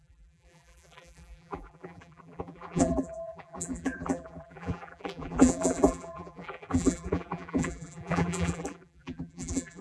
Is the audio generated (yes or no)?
yes